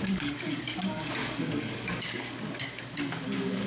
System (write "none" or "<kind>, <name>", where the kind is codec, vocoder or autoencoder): codec, DAC